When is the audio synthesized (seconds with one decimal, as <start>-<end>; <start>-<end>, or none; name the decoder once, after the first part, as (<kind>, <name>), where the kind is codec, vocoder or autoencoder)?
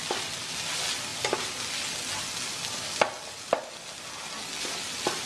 none